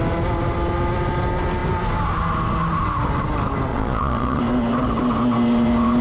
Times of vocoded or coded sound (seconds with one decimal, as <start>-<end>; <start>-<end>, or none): 3.7-4.4